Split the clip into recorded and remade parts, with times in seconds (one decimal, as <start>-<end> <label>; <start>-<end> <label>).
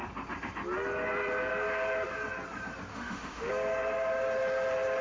0.0-2.9 recorded; 2.9-3.5 remade; 3.5-5.0 recorded